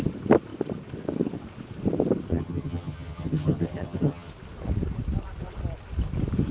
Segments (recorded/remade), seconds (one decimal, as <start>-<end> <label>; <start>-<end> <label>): 0.0-2.3 recorded; 2.3-4.3 remade; 4.3-6.5 recorded